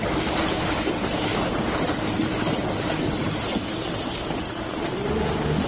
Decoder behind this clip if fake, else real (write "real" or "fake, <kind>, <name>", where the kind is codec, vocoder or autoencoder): real